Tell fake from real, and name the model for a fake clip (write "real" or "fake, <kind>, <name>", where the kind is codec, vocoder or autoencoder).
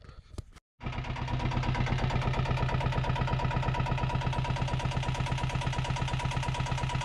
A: real